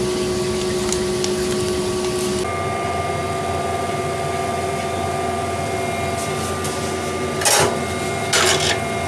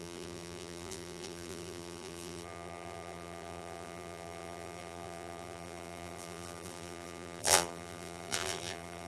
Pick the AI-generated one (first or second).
second